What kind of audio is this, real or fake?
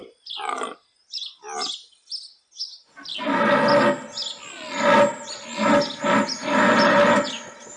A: real